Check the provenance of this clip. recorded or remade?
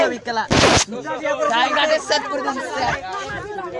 recorded